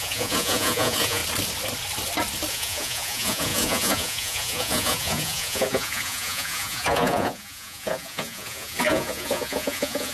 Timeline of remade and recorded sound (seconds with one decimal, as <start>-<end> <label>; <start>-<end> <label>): 0.0-1.2 remade; 1.2-2.5 recorded; 2.5-10.1 remade